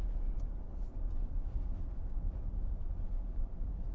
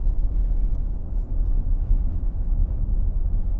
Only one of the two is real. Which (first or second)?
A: second